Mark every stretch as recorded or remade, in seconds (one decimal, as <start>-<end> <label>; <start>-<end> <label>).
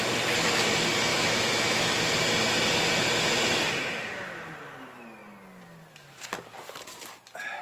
0.0-1.1 recorded; 1.1-2.0 remade; 2.0-7.6 recorded